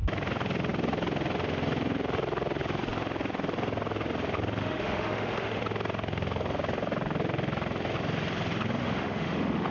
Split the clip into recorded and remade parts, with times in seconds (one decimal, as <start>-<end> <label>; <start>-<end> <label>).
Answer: 0.0-4.6 recorded; 4.6-5.6 remade; 5.6-8.8 recorded; 8.8-9.7 remade

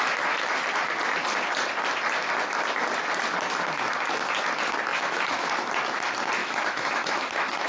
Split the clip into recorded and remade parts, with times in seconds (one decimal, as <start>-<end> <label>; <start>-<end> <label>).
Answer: 0.0-4.9 recorded; 4.9-5.5 remade; 5.5-6.4 recorded; 6.4-7.7 remade

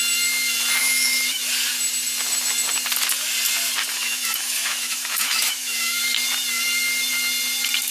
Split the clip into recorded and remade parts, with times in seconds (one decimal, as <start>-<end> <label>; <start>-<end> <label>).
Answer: 0.0-0.8 recorded; 0.8-1.4 remade; 1.4-3.9 recorded; 3.9-6.0 remade; 6.0-7.9 recorded

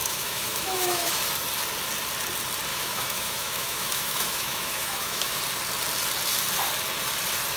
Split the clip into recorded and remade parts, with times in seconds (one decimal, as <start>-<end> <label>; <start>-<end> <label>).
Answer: 0.0-1.1 remade; 1.1-2.7 recorded; 2.7-5.4 remade; 5.4-7.6 recorded

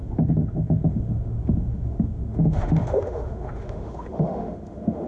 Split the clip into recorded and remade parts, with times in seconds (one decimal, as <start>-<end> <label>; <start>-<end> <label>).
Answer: 0.0-5.1 remade

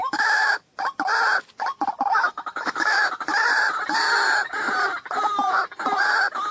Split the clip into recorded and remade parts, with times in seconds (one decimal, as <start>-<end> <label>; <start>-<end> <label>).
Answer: 0.0-0.7 remade; 0.7-2.2 recorded; 2.2-3.1 remade; 3.1-6.5 recorded